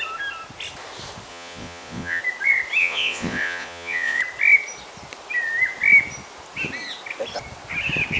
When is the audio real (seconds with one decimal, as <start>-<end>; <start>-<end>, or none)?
0.0-1.3; 2.2-2.8; 4.2-8.2